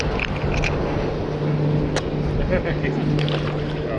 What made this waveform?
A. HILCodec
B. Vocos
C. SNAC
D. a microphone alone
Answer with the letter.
D